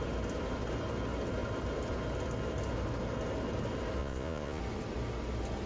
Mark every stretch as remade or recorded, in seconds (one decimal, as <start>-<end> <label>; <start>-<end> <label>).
0.0-4.0 recorded; 4.0-4.6 remade; 4.6-5.7 recorded